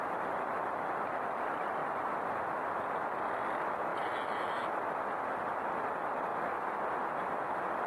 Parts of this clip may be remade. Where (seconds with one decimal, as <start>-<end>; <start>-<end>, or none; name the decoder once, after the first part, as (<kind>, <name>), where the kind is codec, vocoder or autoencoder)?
none